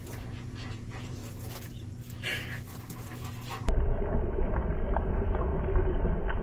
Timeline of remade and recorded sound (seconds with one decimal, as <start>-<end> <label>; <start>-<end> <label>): 0.0-1.2 remade; 1.2-5.0 recorded; 5.0-5.5 remade; 5.5-6.4 recorded